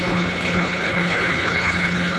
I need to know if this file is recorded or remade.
remade